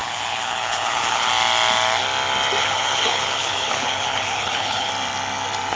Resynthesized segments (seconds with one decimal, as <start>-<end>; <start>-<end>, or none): 0.0-1.3; 2.6-4.9

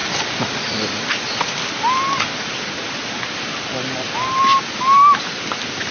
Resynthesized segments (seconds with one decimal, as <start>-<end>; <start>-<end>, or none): none

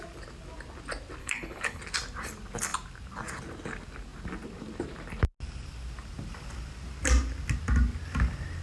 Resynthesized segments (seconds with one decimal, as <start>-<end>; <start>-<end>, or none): 1.2-1.8

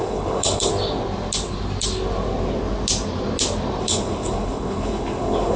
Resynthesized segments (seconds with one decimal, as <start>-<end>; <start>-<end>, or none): 0.0-0.7; 3.8-5.6

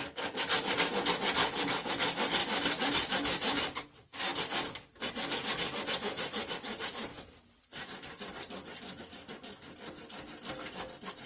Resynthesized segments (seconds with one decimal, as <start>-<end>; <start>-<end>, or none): 1.4-1.9